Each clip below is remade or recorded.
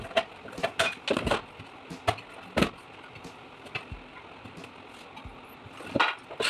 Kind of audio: recorded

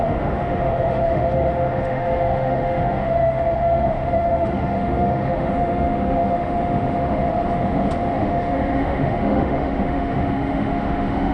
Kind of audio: remade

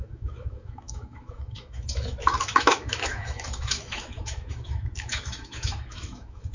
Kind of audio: remade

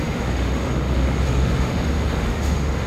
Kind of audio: remade